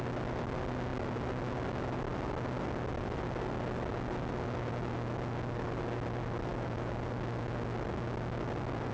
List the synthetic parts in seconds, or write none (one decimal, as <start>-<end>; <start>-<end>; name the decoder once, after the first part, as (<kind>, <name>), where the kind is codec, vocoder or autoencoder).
none